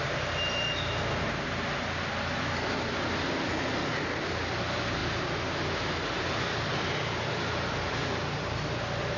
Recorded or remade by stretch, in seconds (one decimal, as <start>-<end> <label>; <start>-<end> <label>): 0.0-9.2 recorded